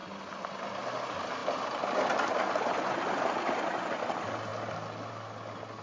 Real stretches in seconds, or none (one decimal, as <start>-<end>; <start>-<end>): 0.0-5.8